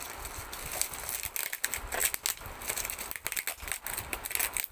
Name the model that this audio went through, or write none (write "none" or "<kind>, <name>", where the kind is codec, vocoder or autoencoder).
none